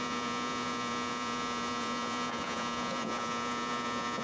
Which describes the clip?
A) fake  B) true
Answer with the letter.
A